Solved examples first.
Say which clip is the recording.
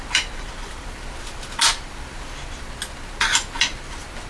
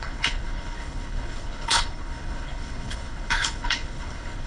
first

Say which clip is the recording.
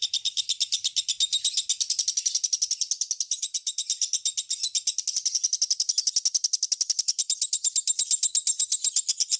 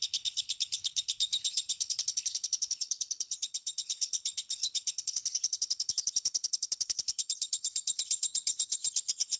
first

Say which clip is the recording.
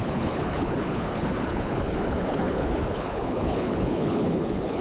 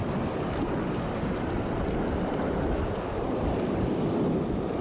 second